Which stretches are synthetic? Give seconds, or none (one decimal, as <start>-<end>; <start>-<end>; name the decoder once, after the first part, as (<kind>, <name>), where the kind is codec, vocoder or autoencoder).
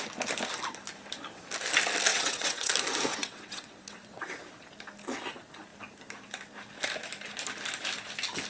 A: 2.1-2.7 (vocoder, WaveNeXt); 3.1-4.3